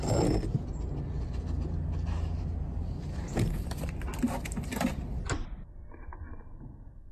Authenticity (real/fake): real